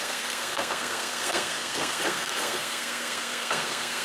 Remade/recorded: remade